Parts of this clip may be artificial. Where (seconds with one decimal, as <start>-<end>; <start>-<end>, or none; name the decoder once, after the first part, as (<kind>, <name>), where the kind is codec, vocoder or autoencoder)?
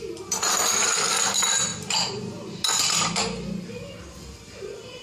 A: none